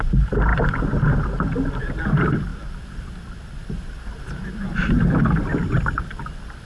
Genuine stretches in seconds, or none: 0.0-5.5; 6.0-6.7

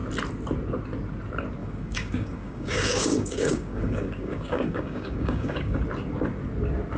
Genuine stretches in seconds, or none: 0.0-1.6; 5.8-7.0

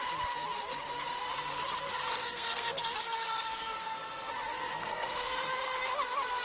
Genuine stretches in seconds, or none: 0.0-2.1; 3.0-3.5; 4.3-4.8; 5.5-6.4

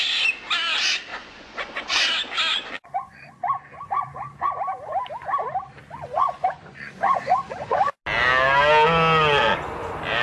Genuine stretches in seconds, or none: 0.0-1.1; 2.0-2.5; 4.5-5.8; 8.0-10.2

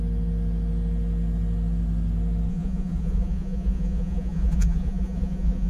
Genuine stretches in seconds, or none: 0.0-2.5

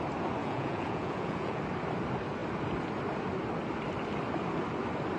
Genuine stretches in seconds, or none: 0.0-0.4; 1.6-5.2